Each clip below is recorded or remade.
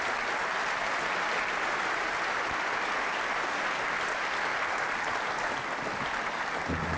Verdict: recorded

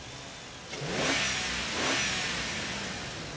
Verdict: recorded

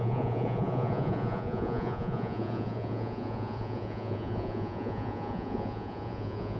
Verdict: remade